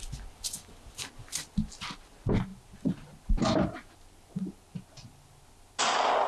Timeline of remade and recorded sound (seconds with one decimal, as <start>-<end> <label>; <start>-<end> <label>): 0.0-6.3 recorded